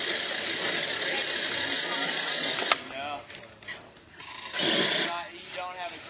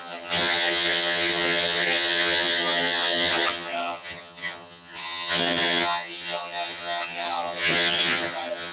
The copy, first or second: second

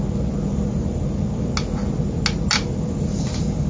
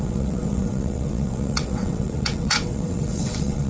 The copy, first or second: second